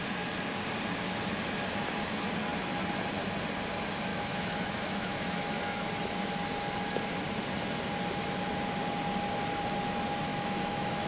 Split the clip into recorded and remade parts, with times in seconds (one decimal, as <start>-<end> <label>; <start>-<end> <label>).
0.0-4.1 recorded; 4.1-5.9 remade; 5.9-10.3 recorded; 10.3-11.1 remade